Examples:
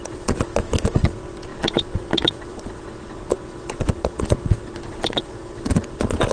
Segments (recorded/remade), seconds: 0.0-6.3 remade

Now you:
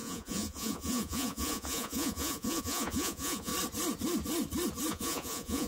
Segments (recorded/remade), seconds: 0.0-3.5 remade; 3.5-4.9 recorded; 4.9-5.7 remade

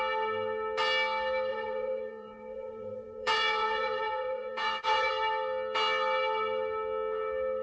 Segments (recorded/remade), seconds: 0.0-1.5 recorded; 1.5-5.1 remade; 5.1-7.6 recorded